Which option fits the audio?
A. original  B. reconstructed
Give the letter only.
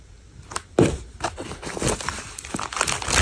A